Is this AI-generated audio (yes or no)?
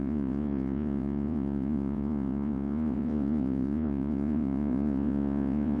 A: yes